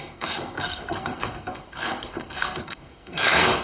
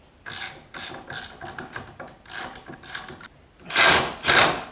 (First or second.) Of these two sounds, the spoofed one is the first